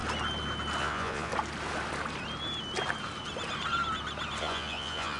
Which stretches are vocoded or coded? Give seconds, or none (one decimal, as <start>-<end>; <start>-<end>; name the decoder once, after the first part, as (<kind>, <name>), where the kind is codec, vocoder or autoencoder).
0.8-1.3 (vocoder, Vocos); 4.4-5.2